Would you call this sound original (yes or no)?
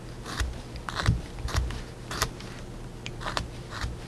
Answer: yes